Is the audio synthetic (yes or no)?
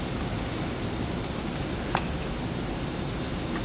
yes